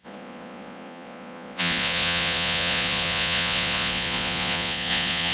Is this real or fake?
fake